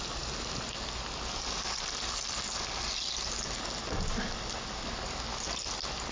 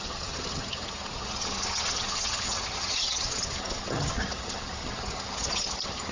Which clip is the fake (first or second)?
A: second